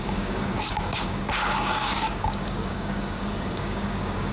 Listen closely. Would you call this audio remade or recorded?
remade